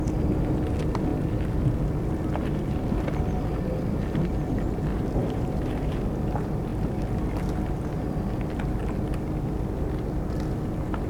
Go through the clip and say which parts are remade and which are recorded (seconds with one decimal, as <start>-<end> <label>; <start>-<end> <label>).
0.0-4.9 recorded; 4.9-6.0 remade; 6.0-11.1 recorded